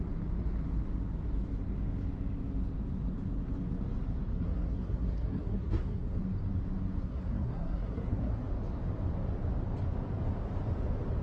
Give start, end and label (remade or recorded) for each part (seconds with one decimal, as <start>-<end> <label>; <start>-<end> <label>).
0.0-4.3 recorded; 4.3-6.2 remade; 6.2-7.0 recorded; 7.0-8.5 remade; 8.5-11.2 recorded